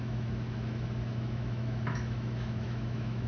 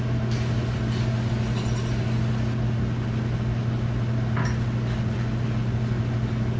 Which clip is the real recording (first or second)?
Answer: second